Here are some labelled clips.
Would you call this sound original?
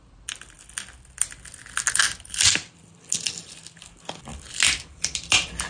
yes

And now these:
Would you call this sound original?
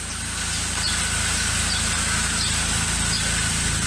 yes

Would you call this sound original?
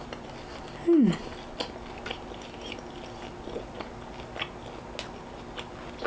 yes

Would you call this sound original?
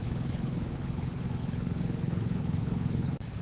no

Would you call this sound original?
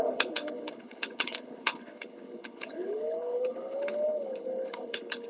no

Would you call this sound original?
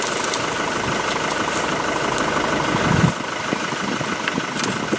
yes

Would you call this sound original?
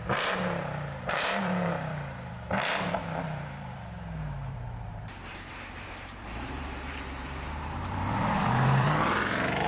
no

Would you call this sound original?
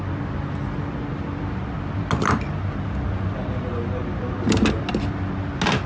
yes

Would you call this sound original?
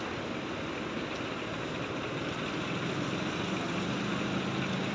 yes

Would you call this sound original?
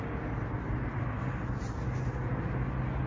yes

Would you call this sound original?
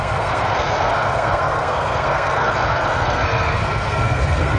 no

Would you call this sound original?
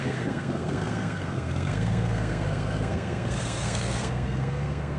no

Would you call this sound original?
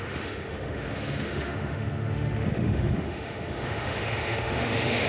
no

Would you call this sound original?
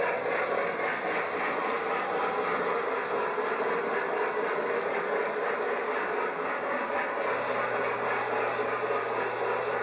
yes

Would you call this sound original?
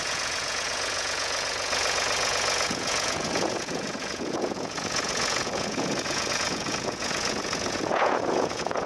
no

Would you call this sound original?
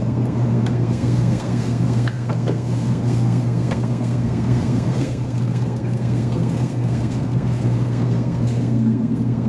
no